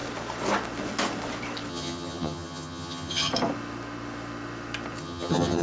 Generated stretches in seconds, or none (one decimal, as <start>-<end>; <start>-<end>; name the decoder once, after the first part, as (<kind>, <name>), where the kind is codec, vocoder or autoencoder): 1.7-3.3 (vocoder, HiFi-GAN); 5.0-5.6